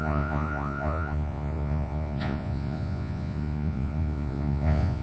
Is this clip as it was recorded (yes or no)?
no